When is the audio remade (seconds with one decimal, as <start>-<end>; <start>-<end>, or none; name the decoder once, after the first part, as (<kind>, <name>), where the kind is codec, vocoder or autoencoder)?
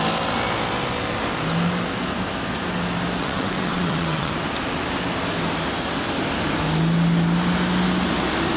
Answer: 3.2-4.3 (vocoder, WaveNeXt)